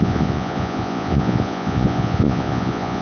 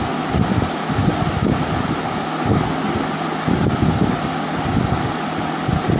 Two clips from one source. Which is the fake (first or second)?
first